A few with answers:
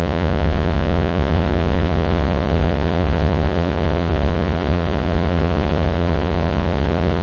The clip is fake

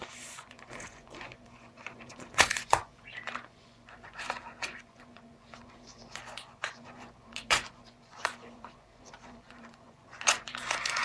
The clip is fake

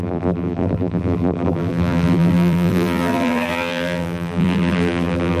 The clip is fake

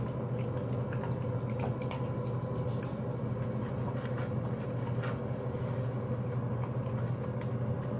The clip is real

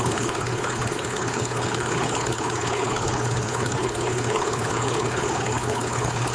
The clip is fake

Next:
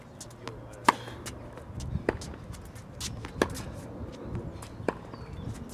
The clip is real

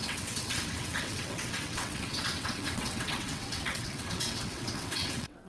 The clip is fake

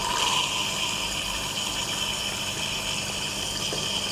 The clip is real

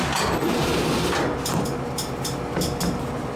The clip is real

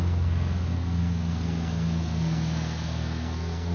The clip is fake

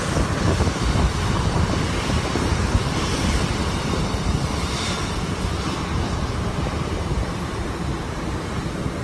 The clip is fake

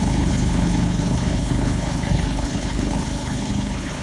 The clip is fake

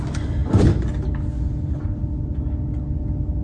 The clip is real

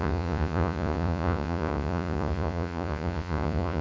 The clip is fake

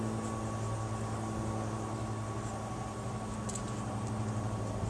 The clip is real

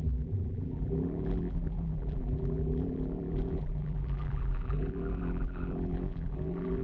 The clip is fake